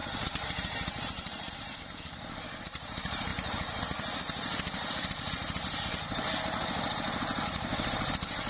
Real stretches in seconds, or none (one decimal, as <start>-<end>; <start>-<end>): 3.3-7.4